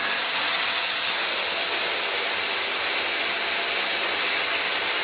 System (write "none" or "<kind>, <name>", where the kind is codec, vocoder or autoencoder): none